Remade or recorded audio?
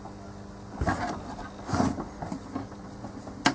recorded